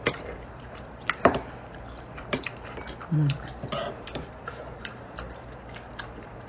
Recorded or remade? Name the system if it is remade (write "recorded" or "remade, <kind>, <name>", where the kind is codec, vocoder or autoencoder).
remade, vocoder, BigVGAN v2